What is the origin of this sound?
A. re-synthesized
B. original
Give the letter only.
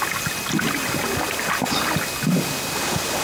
B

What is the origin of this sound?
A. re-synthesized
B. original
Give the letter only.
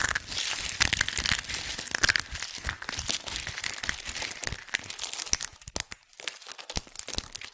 B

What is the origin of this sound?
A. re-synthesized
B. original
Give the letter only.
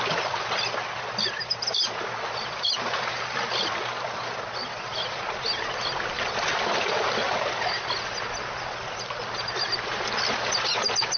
B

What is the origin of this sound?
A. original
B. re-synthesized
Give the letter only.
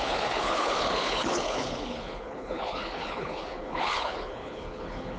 B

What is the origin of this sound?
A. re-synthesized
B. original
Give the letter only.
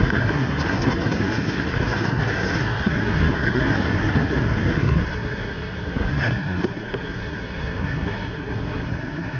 A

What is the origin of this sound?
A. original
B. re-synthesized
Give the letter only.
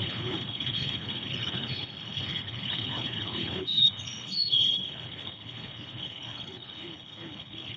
B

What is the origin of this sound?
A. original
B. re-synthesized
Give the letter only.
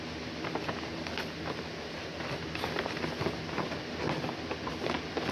A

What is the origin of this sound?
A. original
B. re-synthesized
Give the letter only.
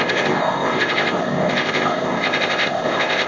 B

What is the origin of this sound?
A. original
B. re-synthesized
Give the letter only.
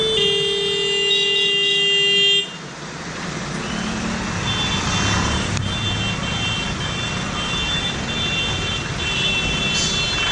A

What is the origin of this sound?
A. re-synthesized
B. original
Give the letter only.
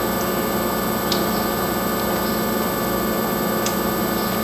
B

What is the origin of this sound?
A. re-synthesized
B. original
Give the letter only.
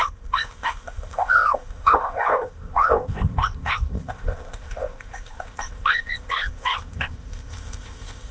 A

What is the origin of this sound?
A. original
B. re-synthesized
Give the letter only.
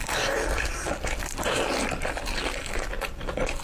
A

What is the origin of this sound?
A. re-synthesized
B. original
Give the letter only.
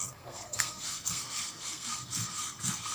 A